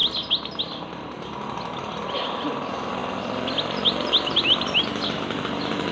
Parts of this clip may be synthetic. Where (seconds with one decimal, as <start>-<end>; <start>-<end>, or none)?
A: none